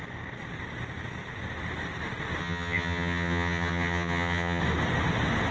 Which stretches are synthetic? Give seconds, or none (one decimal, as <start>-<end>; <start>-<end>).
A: 2.4-4.6